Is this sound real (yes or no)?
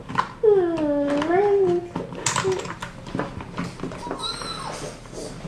yes